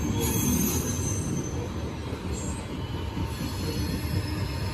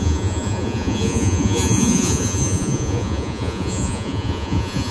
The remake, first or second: second